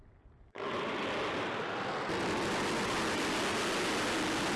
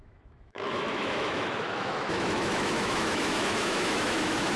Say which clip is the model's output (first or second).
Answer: second